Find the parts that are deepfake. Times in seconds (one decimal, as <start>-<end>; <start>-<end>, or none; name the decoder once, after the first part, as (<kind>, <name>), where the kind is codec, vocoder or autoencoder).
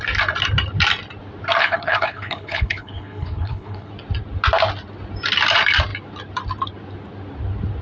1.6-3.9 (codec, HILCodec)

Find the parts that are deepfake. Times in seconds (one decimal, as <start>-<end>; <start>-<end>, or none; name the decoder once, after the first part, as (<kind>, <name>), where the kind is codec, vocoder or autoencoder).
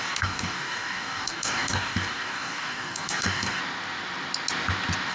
0.0-3.6 (codec, DAC)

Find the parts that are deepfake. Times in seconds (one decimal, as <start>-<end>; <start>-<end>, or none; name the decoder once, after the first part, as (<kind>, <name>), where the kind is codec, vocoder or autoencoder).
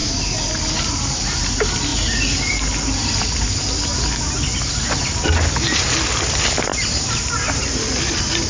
none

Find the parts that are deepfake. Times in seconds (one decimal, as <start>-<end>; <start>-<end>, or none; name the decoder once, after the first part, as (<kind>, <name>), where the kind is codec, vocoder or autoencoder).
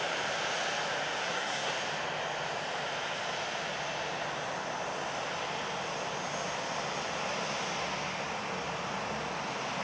1.2-1.7 (codec, SNAC)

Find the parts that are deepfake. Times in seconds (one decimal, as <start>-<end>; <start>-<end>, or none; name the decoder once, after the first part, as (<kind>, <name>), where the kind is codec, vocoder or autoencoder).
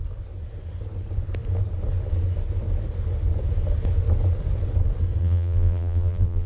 5.2-6.5 (vocoder, BigVGAN v2)